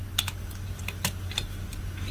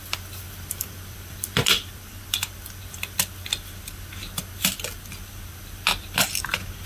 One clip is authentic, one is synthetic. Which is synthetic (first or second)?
second